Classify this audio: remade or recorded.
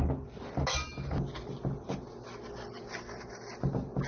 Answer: recorded